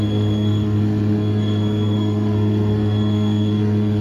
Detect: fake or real fake